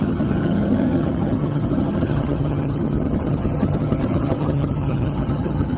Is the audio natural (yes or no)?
no